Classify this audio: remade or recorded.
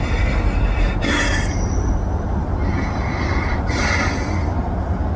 recorded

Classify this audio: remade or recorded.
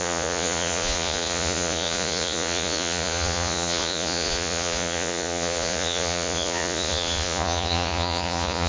remade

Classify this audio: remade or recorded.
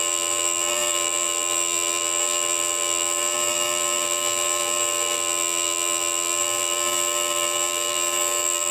remade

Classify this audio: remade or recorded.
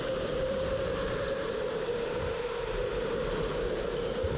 remade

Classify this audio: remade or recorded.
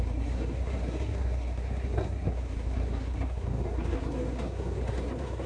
remade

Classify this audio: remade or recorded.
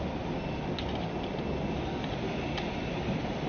recorded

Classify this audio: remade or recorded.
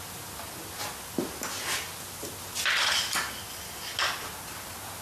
recorded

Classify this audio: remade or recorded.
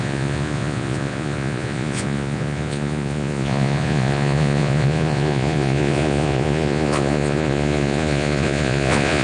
remade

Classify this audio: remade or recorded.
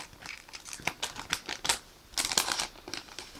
recorded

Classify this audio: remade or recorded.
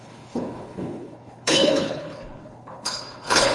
remade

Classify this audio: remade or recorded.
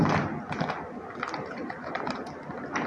recorded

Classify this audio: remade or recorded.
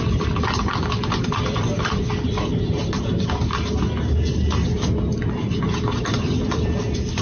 recorded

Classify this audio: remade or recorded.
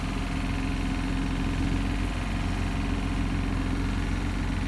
recorded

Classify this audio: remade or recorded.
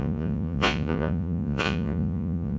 remade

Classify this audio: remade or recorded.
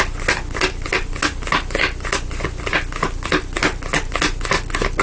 recorded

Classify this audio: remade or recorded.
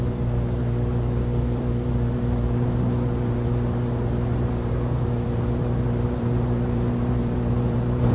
remade